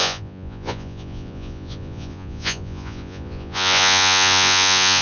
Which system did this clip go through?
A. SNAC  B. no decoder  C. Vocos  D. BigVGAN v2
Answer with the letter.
C